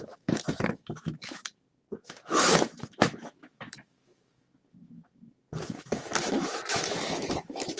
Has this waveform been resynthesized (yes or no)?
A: yes